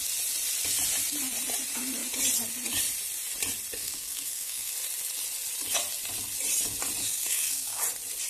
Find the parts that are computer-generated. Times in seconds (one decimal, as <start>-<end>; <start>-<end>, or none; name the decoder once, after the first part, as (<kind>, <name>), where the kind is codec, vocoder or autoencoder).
3.8-4.7 (codec, SNAC); 7.0-7.8